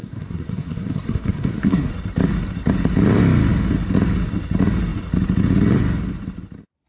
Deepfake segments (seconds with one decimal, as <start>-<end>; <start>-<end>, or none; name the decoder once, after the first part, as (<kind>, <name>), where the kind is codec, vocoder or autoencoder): 0.0-1.9 (codec, SNAC)